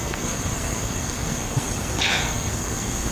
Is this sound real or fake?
fake